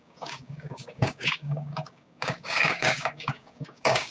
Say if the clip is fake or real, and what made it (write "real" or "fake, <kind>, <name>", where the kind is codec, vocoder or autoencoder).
fake, codec, DAC